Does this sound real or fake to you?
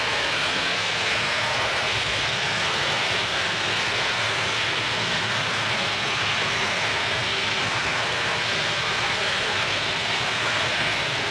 fake